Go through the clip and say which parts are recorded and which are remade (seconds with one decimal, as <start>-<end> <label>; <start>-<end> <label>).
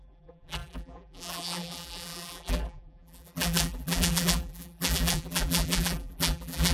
0.0-6.7 remade